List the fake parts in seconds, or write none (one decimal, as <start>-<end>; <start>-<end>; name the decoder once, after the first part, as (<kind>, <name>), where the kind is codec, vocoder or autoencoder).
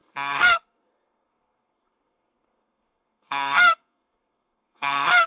0.0-5.3 (codec, SNAC)